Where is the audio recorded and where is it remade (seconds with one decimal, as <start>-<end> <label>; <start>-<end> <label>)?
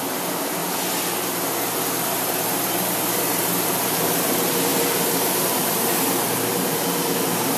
0.0-0.6 remade; 0.6-1.9 recorded; 1.9-7.6 remade